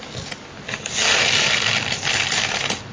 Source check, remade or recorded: recorded